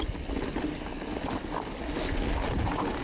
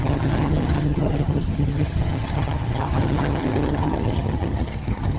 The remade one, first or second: second